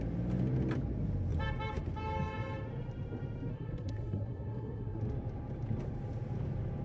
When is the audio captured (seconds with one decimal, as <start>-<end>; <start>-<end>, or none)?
0.0-3.5; 5.0-6.8